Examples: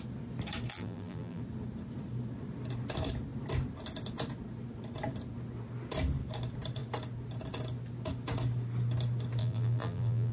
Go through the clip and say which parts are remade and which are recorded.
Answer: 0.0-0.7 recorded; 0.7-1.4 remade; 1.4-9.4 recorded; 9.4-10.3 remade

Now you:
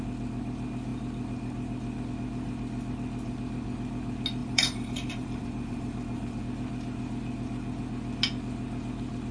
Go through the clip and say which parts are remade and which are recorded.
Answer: 0.0-4.4 recorded; 4.4-6.4 remade; 6.4-9.3 recorded

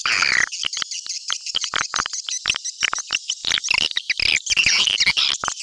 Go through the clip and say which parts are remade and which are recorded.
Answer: 0.0-1.6 recorded; 1.6-2.4 remade; 2.4-3.4 recorded; 3.4-5.6 remade